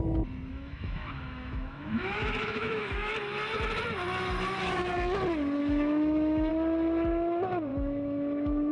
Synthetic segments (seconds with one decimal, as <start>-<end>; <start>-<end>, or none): 0.5-3.1; 5.6-6.5; 7.7-8.7